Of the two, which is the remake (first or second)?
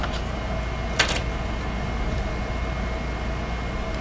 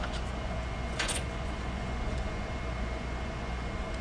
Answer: second